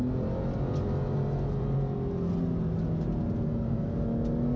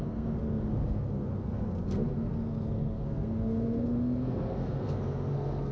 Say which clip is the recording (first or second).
first